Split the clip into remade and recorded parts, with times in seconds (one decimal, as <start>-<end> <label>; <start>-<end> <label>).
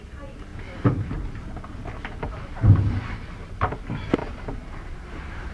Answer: 0.0-0.5 recorded; 0.5-3.8 remade; 3.8-4.2 recorded; 4.2-5.5 remade